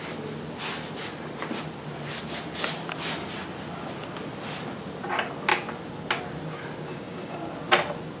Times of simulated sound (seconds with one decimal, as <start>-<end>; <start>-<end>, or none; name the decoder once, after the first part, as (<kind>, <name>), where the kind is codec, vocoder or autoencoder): 6.9-7.4 (codec, DAC)